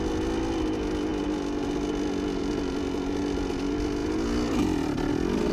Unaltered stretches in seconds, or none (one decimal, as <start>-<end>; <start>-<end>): 0.0-5.5

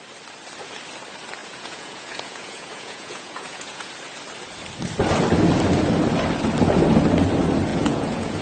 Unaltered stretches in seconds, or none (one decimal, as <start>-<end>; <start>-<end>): 0.0-1.4; 3.9-7.7

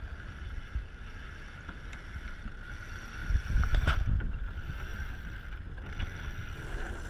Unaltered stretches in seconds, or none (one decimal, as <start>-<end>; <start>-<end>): 0.0-7.1

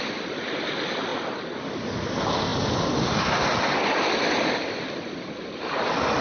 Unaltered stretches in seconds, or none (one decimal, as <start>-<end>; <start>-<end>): 0.0-6.2

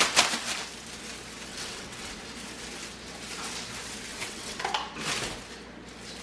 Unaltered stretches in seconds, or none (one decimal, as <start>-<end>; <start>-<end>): 0.0-1.5; 2.1-4.1; 4.6-6.2

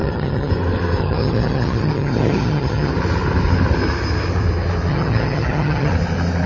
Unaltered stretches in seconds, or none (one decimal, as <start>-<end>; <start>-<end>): 0.5-1.0; 2.9-4.9; 5.9-6.5

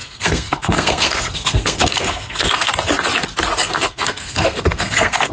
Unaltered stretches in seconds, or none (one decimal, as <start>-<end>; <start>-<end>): 2.7-3.6

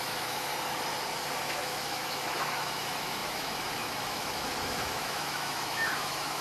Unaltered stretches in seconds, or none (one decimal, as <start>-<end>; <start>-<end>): 0.5-1.4